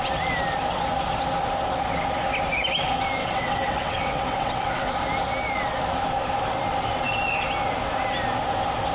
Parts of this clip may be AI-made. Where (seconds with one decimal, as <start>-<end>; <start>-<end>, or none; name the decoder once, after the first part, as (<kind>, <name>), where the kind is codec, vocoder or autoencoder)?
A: 3.2-4.9 (vocoder, WaveNeXt)

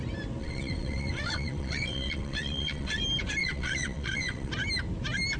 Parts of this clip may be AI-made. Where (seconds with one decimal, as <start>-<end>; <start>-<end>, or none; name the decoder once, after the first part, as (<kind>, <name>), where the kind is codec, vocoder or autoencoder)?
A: 0.4-3.0 (vocoder, WaveNeXt); 3.4-4.5

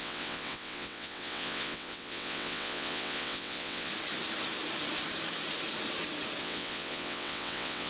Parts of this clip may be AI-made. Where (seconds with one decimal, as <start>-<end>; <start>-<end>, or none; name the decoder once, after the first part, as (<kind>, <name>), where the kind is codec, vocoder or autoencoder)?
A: 0.0-3.9 (vocoder, WaveNeXt); 6.4-7.9

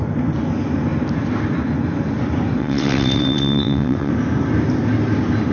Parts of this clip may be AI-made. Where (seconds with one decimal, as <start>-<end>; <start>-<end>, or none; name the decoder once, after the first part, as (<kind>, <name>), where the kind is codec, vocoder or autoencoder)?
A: 2.6-4.1 (vocoder, WaveNeXt)

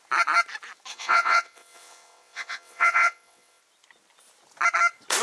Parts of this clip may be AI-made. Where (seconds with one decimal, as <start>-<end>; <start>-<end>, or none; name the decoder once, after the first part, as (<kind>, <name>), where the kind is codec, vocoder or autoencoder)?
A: 0.9-3.6 (vocoder, WaveNeXt)

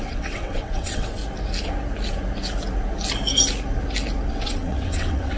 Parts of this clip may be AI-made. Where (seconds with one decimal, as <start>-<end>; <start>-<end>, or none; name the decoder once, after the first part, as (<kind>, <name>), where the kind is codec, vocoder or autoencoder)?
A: 0.0-1.2 (vocoder, WaveNeXt); 4.3-5.4